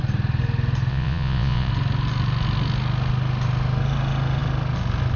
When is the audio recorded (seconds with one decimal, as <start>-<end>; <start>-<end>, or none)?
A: 0.0-0.9; 1.7-5.2